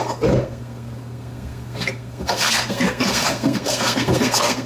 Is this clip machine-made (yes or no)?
yes